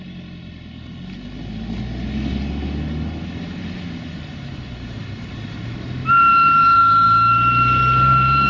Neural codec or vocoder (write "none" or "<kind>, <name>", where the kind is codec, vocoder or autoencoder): none